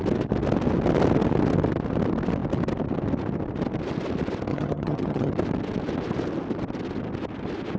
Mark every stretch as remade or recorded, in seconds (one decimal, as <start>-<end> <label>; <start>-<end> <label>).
0.0-4.5 recorded; 4.5-5.3 remade; 5.3-7.8 recorded